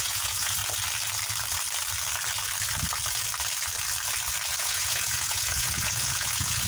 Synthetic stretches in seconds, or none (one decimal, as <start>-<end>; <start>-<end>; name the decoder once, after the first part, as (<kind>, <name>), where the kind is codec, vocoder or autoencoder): 0.0-0.6 (vocoder, Vocos); 4.6-6.7